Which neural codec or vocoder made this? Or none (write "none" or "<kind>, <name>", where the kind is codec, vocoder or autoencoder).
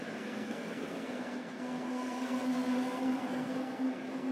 codec, SNAC